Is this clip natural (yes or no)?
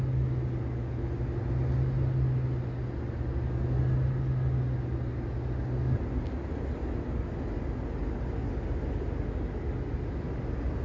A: yes